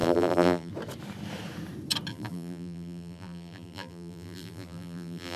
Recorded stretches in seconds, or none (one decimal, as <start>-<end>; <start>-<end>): 0.7-2.1